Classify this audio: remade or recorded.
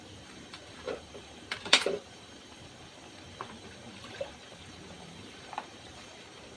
remade